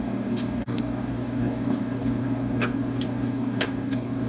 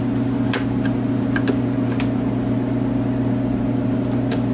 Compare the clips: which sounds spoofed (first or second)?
first